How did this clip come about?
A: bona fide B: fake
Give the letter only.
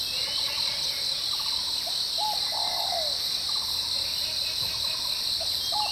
A